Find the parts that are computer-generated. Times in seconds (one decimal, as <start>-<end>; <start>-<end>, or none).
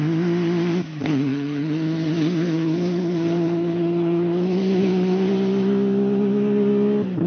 0.9-5.3